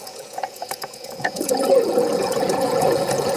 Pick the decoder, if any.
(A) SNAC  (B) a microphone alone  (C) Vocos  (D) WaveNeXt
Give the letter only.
C